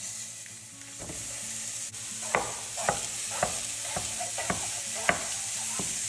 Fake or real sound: real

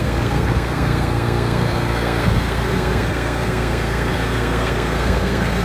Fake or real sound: fake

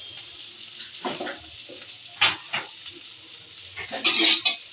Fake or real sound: real